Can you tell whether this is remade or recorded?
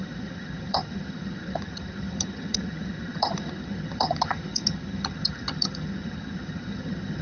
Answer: remade